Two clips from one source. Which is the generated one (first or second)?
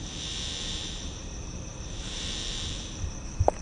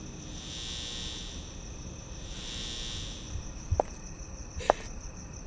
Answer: first